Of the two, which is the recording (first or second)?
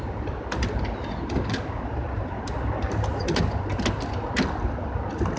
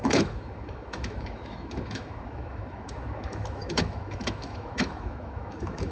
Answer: first